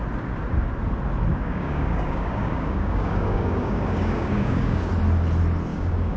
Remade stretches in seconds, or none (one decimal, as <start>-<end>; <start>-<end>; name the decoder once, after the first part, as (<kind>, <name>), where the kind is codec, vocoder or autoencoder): 1.3-4.9 (codec, DAC); 5.7-6.2